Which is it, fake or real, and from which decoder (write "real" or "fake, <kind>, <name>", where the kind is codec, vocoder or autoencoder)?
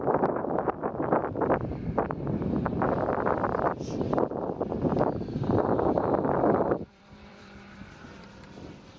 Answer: fake, vocoder, BigVGAN v2